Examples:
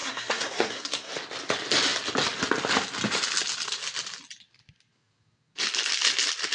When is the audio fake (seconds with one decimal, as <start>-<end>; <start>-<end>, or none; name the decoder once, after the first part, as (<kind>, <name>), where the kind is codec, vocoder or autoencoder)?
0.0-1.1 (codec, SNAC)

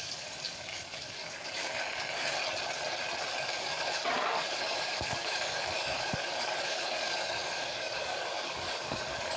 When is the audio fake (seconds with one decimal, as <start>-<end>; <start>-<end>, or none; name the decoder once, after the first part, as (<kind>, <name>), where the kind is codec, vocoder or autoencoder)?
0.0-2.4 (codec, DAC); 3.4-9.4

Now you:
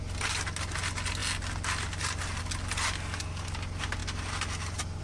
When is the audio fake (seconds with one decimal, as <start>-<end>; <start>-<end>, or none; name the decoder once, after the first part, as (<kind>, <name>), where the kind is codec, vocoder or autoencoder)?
none

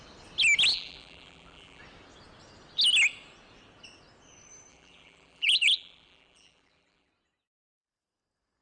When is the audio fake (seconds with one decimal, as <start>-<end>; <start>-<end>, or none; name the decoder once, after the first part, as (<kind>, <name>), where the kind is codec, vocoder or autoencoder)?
0.7-1.8 (vocoder, BigVGAN v2); 4.7-7.1